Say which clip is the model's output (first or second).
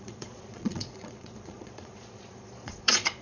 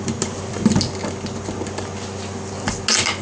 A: first